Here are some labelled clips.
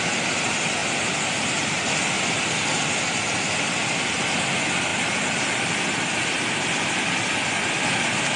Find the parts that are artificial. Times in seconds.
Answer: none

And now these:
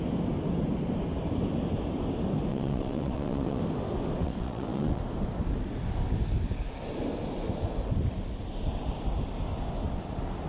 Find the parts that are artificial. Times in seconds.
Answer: 2.5-3.6; 4.2-5.0

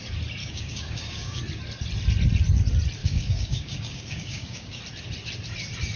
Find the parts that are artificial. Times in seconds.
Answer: 0.4-1.4; 3.0-4.8

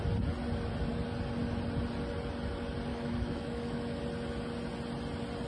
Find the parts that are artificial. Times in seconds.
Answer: 2.9-4.0